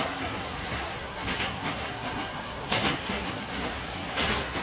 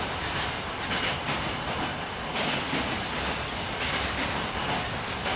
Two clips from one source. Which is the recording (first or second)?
second